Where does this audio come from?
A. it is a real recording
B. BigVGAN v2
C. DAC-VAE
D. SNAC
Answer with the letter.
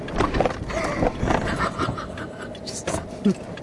A